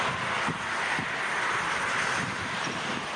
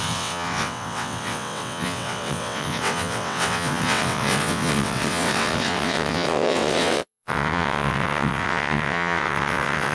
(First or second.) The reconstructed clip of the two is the second